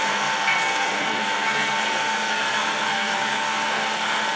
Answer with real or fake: fake